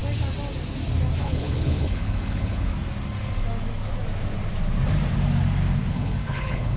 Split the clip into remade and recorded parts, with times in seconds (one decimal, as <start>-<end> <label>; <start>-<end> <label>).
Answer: 0.0-1.2 recorded; 1.2-2.7 remade; 2.7-5.9 recorded; 5.9-6.8 remade